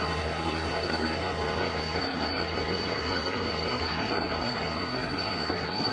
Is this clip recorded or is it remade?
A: remade